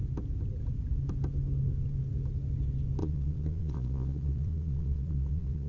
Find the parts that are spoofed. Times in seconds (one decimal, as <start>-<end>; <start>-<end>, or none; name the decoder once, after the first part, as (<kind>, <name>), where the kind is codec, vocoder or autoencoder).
3.0-5.7 (vocoder, Vocos)